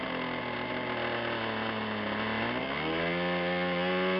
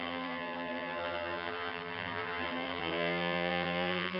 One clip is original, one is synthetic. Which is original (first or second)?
first